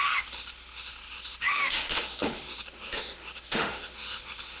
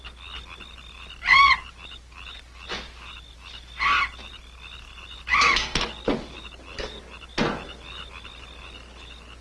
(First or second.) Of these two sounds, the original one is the second